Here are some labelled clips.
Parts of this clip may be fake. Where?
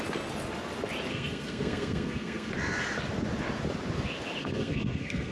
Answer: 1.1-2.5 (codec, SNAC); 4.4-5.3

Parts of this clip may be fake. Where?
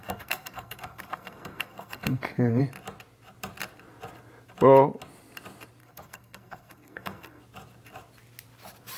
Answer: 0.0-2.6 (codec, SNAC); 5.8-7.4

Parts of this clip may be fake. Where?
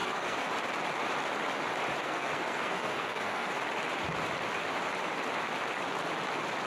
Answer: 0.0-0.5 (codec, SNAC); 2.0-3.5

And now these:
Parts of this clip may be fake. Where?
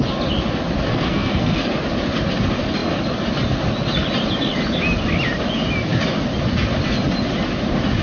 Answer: 0.9-1.7 (codec, SNAC)